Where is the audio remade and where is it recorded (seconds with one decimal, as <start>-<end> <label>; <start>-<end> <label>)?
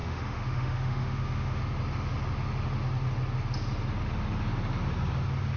0.0-1.6 remade; 1.6-5.6 recorded